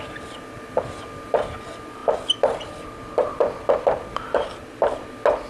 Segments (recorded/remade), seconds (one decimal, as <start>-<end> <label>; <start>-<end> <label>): 0.0-5.5 recorded

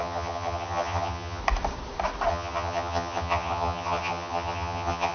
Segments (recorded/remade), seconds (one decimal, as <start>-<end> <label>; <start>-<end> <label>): 0.0-1.4 remade; 1.4-2.3 recorded; 2.3-5.1 remade

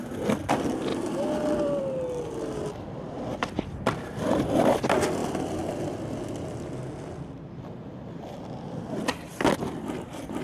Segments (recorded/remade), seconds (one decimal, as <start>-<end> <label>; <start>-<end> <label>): 0.0-0.9 recorded; 0.9-1.8 remade; 1.8-10.4 recorded

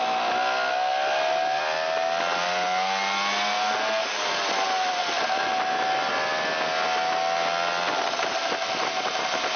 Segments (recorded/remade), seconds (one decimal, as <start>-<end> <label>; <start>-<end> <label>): 0.0-9.6 recorded

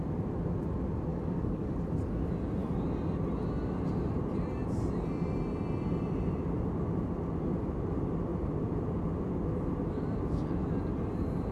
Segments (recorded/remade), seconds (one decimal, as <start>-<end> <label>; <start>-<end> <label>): 0.0-1.1 recorded; 1.1-1.7 remade; 1.7-11.5 recorded

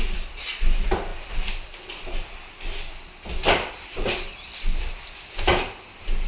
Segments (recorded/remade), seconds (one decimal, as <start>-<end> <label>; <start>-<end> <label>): 0.0-6.3 recorded